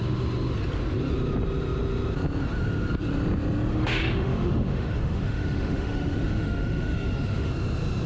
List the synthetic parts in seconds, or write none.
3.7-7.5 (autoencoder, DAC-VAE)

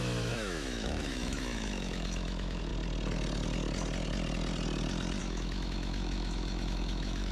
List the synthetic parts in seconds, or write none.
0.0-2.7 (autoencoder, DAC-VAE); 5.2-7.3

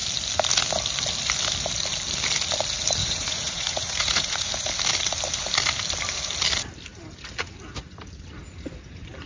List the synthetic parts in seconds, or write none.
3.0-4.5 (vocoder, Vocos)

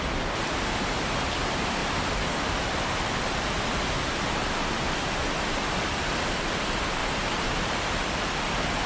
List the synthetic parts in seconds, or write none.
7.0-7.9 (vocoder, BigVGAN v2)

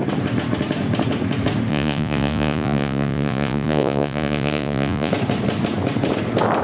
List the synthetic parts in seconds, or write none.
1.7-5.1 (vocoder, Vocos)